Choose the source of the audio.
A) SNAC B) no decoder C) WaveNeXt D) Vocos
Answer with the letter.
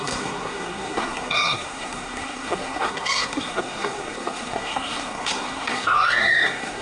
A